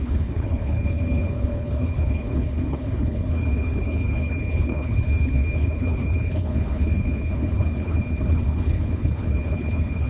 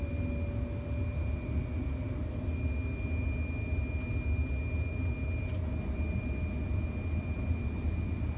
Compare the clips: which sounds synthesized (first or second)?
first